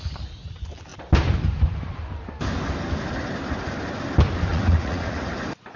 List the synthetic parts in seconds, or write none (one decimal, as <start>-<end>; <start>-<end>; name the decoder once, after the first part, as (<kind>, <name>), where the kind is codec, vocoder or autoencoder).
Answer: 4.5-5.3 (vocoder, Vocos)